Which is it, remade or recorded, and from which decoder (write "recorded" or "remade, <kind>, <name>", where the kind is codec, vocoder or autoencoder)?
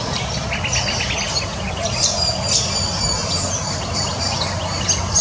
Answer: recorded